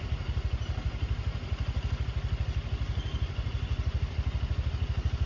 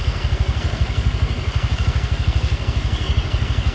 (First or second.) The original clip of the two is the first